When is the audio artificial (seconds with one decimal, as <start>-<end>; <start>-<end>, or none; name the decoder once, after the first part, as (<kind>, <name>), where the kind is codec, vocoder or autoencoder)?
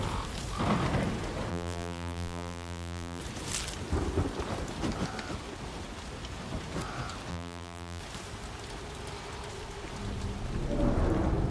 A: 1.5-3.2 (vocoder, BigVGAN v2); 7.3-8.0